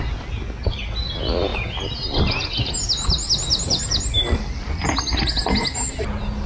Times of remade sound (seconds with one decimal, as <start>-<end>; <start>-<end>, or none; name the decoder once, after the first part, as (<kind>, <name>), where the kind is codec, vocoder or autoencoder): none